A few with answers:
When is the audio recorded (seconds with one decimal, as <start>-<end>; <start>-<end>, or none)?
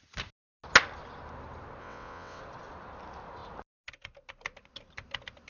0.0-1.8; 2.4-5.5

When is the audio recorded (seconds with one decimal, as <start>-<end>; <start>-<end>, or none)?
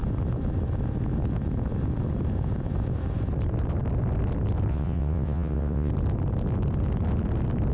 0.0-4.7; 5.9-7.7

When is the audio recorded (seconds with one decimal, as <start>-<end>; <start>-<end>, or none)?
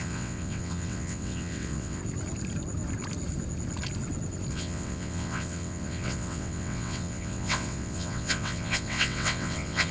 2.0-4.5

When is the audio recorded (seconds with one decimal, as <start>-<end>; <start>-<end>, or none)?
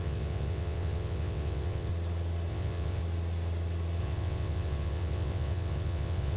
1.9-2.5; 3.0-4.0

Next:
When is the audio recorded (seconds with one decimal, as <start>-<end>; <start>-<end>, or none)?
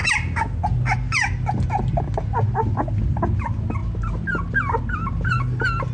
0.0-5.9